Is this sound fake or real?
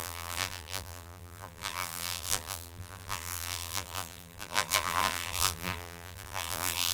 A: fake